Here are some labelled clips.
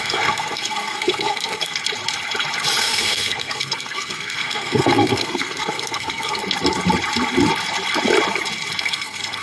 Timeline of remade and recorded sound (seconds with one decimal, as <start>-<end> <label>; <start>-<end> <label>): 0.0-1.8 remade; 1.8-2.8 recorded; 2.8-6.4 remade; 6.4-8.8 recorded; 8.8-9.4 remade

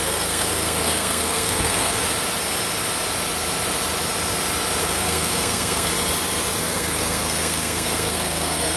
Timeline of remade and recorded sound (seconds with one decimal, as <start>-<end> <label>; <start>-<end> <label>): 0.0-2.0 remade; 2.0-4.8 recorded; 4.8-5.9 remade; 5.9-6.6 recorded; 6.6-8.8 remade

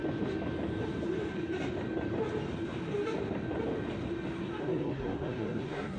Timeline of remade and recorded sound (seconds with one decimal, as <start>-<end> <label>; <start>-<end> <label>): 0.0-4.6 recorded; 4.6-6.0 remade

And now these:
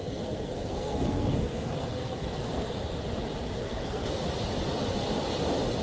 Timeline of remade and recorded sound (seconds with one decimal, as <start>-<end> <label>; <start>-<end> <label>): 0.0-2.7 remade; 2.7-3.6 recorded; 3.6-4.2 remade; 4.2-5.8 recorded

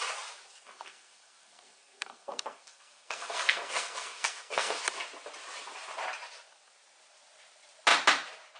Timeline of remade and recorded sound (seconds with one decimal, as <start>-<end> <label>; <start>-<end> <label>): 0.0-0.5 recorded; 0.5-4.8 remade; 4.8-8.6 recorded